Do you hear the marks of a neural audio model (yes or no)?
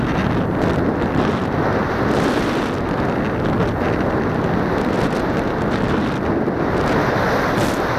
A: no